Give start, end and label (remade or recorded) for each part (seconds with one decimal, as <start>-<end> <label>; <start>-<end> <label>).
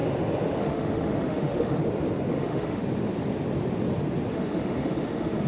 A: 0.0-0.6 recorded; 0.6-1.8 remade; 1.8-2.3 recorded; 2.3-2.8 remade; 2.8-4.3 recorded; 4.3-5.5 remade